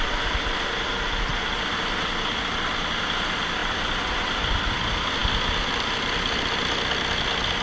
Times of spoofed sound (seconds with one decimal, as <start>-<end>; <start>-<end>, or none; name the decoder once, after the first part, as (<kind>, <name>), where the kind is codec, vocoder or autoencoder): 1.3-3.0 (vocoder, BigVGAN v2); 3.6-4.8